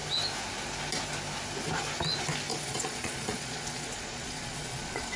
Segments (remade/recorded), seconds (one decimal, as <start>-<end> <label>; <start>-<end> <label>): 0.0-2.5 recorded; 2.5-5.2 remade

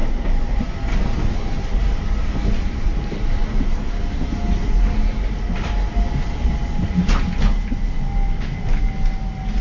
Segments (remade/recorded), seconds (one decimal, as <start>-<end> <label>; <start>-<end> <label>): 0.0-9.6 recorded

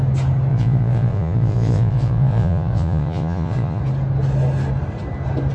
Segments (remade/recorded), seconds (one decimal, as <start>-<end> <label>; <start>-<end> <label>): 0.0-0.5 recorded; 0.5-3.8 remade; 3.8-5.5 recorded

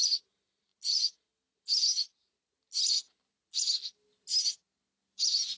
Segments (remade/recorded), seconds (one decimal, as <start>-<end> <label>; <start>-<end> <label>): 0.0-5.6 recorded

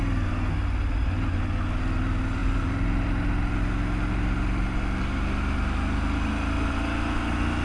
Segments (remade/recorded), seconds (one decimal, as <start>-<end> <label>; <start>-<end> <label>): 0.0-7.6 recorded

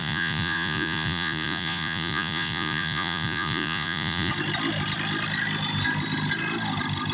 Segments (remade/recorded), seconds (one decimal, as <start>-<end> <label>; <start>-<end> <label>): 0.0-4.3 remade; 4.3-7.1 recorded